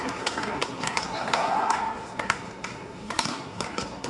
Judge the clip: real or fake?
fake